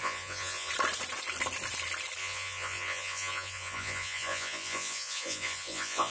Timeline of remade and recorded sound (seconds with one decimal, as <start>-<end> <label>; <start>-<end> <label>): 0.0-0.7 remade; 0.7-2.2 recorded; 2.2-6.1 remade